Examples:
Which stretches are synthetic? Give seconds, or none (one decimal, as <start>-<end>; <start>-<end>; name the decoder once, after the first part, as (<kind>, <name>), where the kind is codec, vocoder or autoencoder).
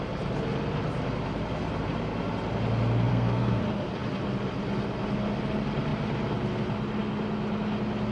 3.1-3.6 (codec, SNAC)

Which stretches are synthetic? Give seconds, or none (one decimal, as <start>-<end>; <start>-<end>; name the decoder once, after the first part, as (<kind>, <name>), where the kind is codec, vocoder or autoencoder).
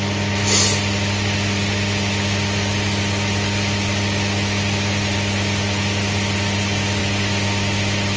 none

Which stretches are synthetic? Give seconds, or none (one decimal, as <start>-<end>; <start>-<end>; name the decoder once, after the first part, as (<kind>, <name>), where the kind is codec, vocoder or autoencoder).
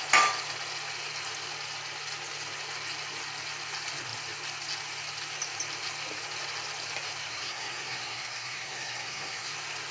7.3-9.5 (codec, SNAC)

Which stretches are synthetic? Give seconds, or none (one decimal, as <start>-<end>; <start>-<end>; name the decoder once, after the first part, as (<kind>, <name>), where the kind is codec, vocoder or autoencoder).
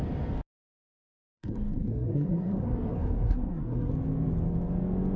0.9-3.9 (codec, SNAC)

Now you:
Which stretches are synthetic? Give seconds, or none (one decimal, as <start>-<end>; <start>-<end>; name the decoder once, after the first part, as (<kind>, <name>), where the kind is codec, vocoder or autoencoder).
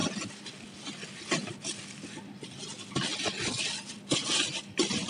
none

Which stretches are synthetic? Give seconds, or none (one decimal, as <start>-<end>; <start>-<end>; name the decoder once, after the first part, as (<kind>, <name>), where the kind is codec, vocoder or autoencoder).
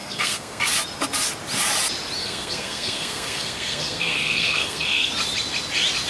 0.0-0.6 (codec, SNAC); 2.2-5.1